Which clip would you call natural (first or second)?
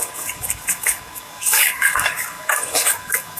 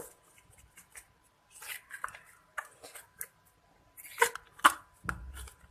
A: second